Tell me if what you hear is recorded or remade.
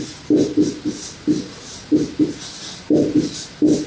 recorded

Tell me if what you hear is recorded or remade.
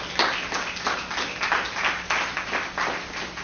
recorded